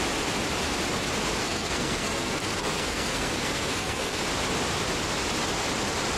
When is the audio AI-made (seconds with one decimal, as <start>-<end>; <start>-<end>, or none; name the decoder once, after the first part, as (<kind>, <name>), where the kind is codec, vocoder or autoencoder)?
1.4-4.2 (codec, SNAC)